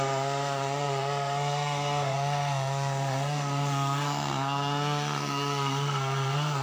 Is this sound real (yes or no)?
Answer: no